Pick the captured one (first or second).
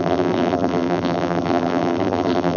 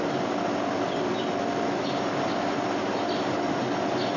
second